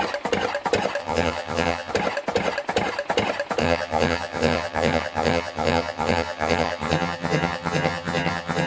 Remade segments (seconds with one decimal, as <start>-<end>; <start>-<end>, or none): 1.0-1.9; 3.6-8.7